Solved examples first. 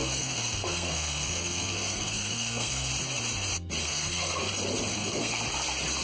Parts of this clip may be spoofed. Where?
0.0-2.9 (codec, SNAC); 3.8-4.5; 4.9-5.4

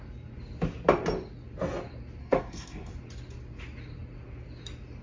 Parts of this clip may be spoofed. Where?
2.2-2.9 (codec, SNAC)

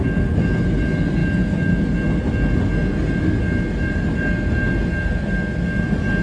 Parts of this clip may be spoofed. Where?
none